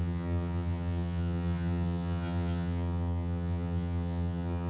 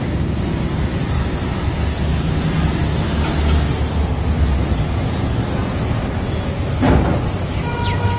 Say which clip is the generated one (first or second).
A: first